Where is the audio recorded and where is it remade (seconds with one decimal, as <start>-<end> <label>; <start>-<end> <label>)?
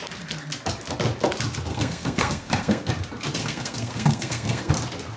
0.0-1.7 recorded; 1.7-2.9 remade; 2.9-3.4 recorded; 3.4-4.7 remade; 4.7-5.2 recorded